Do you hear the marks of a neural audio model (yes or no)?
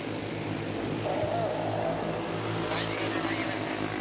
no